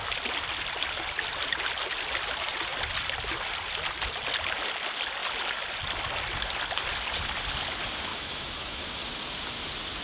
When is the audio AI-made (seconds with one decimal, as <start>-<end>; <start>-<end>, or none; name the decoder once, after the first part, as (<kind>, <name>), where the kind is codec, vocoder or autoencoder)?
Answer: 8.1-8.8 (autoencoder, DAC-VAE)